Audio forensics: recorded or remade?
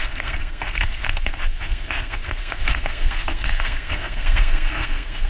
remade